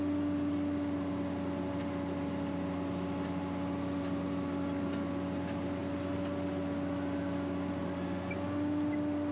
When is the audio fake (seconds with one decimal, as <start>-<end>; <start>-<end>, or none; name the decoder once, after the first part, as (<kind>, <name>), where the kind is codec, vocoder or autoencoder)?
none